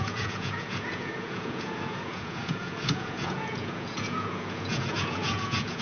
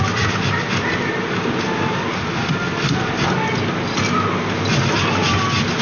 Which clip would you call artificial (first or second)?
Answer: first